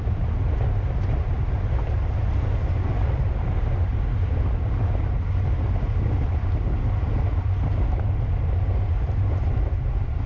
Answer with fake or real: real